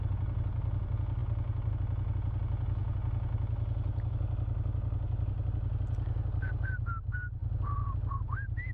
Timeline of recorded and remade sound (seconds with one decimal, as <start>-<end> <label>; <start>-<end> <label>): 0.0-8.7 recorded